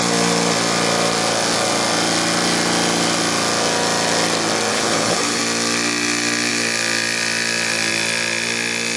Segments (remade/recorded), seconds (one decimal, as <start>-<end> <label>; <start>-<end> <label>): 0.0-4.7 recorded; 4.7-5.4 remade; 5.4-9.0 recorded

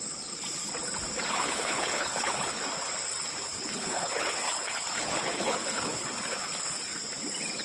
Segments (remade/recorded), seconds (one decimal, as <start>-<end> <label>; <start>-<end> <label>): 0.0-1.3 recorded; 1.3-2.6 remade; 2.6-3.5 recorded; 3.5-6.5 remade; 6.5-7.6 recorded

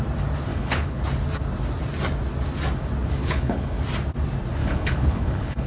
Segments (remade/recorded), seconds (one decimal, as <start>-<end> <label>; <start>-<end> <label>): 0.0-0.5 recorded; 0.5-1.0 remade; 1.0-3.2 recorded; 3.2-3.8 remade; 3.8-4.6 recorded; 4.6-5.7 remade